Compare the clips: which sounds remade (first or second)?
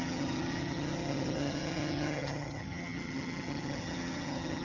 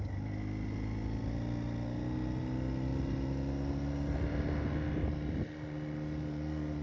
first